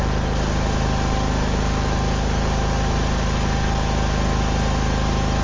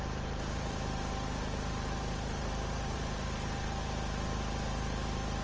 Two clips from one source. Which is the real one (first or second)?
first